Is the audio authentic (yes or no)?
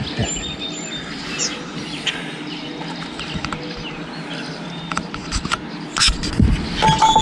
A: yes